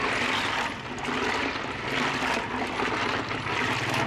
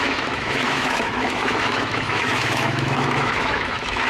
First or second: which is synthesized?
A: second